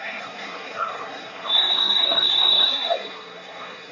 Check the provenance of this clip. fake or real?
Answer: fake